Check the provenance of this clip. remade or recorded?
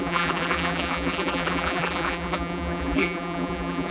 remade